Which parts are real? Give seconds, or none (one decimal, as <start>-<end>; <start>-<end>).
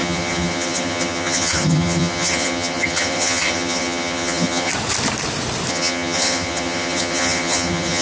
4.7-5.7